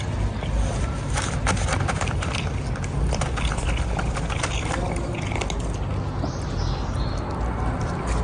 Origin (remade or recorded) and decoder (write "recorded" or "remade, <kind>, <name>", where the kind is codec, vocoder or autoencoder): recorded